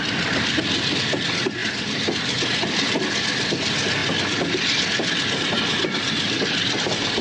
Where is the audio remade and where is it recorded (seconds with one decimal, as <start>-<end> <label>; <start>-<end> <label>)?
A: 0.0-1.6 recorded; 1.6-3.0 remade; 3.0-7.2 recorded